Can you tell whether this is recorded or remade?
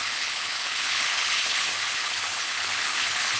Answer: remade